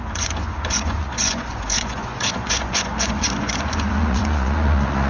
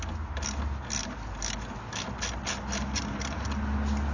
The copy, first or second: first